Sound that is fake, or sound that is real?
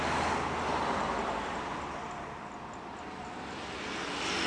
real